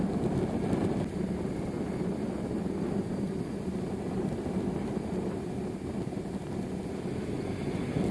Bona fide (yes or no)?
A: yes